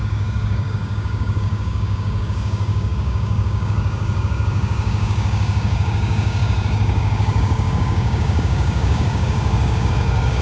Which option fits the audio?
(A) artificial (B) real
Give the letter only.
A